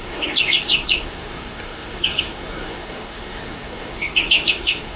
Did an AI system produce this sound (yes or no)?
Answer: yes